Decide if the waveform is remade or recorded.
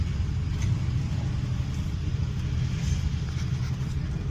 recorded